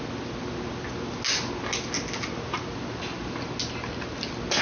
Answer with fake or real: real